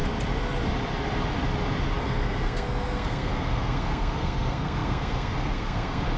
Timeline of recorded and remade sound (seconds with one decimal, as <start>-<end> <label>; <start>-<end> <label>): 0.0-2.0 recorded; 2.0-6.2 remade